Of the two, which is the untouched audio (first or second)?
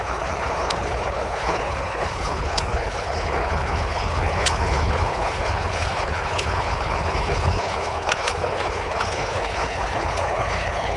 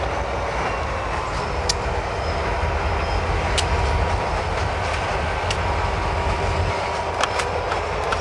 second